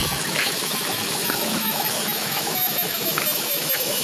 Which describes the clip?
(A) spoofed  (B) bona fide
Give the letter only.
A